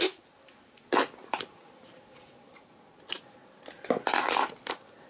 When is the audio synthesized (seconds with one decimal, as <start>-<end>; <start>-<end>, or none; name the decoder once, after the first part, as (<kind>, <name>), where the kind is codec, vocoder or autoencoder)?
none